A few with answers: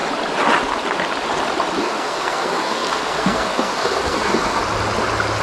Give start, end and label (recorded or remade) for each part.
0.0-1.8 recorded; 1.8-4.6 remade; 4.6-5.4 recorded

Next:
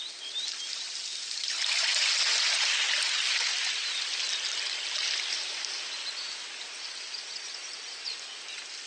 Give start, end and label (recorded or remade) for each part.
0.0-8.9 recorded